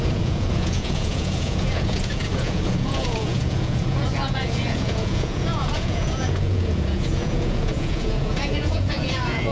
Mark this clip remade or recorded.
remade